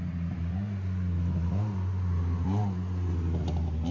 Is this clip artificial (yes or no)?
no